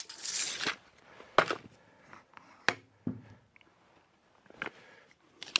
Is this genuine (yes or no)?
yes